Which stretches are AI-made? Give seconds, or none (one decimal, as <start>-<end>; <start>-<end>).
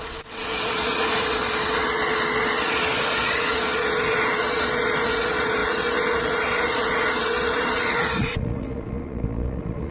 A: 0.0-9.9